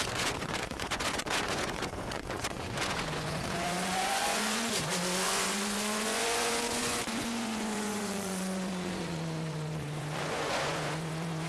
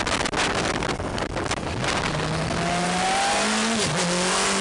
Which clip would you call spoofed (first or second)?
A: first